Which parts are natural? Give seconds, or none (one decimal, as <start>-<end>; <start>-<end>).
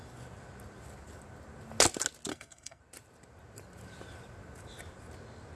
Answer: 0.0-2.3; 2.8-5.6